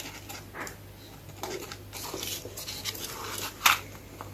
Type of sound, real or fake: real